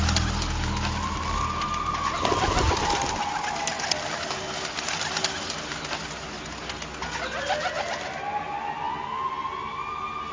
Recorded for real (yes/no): yes